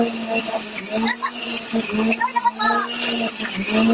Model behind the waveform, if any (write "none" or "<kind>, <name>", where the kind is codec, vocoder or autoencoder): none